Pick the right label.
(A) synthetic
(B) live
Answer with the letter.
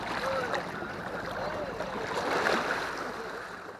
B